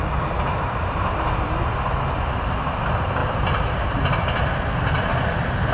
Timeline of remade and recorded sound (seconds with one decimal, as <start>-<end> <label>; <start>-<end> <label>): 0.0-5.7 recorded